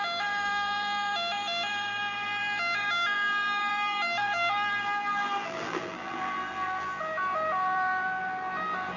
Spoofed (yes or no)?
yes